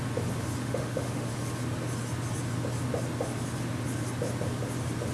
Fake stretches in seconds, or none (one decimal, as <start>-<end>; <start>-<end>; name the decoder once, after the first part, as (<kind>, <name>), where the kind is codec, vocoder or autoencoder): 0.6-1.3 (autoencoder, DAC-VAE)